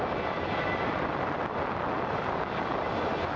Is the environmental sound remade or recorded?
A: recorded